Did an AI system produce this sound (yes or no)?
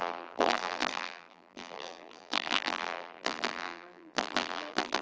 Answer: yes